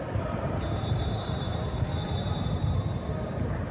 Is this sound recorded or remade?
recorded